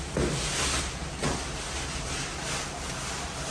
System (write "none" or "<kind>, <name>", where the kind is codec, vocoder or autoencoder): none